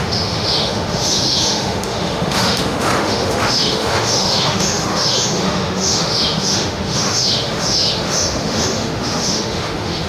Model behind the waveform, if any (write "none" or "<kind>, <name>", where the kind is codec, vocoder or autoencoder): autoencoder, DAC-VAE